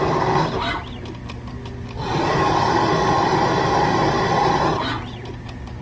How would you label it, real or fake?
real